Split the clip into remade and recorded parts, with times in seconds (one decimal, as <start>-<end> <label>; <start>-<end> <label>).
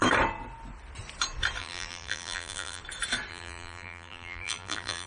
0.0-1.6 recorded; 1.6-2.8 remade; 2.8-3.3 recorded; 3.3-5.1 remade